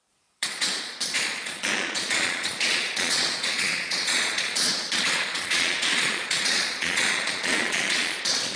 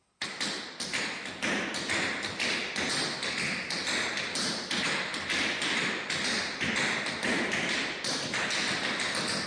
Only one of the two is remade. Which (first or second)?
first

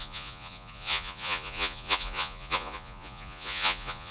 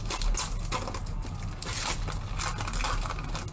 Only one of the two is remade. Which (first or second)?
first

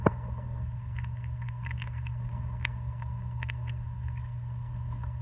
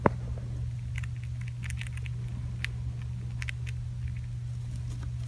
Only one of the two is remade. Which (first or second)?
first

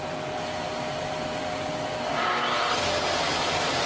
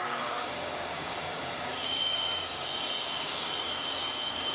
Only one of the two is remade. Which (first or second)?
second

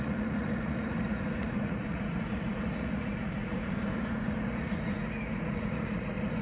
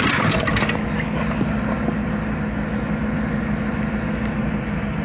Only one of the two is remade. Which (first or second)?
first